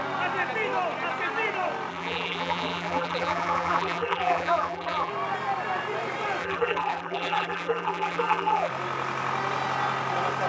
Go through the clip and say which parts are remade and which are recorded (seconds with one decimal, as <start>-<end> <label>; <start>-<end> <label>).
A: 0.0-1.9 recorded; 1.9-5.1 remade; 5.1-6.4 recorded; 6.4-8.7 remade; 8.7-10.5 recorded